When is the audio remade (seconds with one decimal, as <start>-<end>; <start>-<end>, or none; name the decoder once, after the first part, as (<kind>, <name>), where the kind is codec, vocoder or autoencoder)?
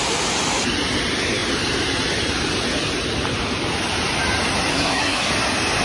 4.7-5.3 (codec, SNAC)